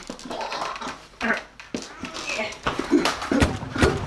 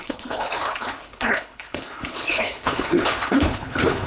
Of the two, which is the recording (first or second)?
first